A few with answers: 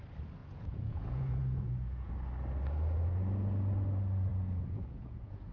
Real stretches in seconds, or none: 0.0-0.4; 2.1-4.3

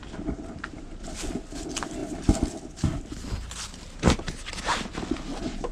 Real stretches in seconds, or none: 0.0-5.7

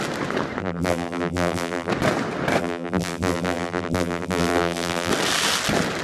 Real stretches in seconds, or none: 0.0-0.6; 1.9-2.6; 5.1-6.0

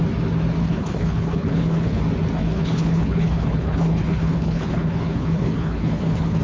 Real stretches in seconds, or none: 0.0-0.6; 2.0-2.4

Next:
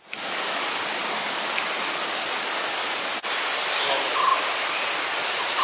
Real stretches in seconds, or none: 0.0-5.6

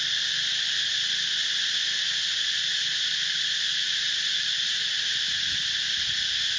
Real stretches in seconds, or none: 0.0-6.6